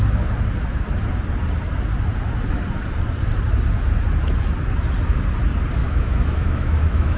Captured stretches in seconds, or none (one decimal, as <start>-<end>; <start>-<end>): 0.0-5.8